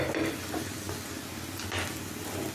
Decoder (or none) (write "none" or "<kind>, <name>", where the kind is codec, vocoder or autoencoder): none